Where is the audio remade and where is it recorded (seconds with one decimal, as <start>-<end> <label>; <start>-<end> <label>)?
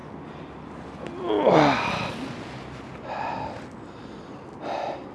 0.0-5.1 recorded